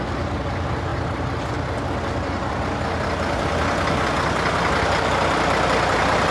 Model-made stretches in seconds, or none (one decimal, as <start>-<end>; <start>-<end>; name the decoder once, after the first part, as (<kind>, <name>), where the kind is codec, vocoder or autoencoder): none